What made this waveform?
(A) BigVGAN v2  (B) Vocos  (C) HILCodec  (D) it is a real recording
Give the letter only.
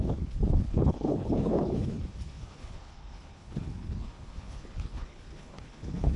C